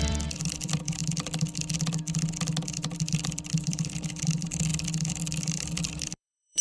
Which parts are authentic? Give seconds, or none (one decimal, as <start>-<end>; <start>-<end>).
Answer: 1.0-3.1; 4.7-5.8

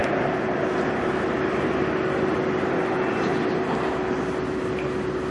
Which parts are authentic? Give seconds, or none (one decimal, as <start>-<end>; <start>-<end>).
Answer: 0.0-5.3

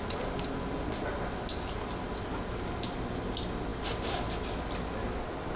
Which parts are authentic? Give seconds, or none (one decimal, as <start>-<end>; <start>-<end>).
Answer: 0.0-5.6

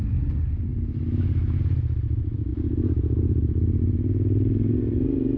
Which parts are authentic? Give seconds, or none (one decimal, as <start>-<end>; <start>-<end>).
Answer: 0.0-0.7; 1.6-2.5; 3.8-5.4

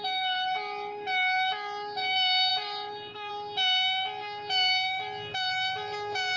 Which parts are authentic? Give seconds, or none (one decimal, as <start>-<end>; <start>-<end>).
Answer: 0.0-2.5; 3.3-6.4